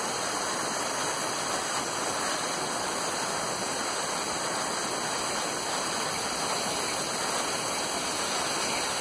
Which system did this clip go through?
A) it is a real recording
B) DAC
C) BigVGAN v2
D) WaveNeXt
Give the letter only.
A